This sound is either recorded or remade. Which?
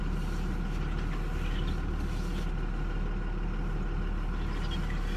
recorded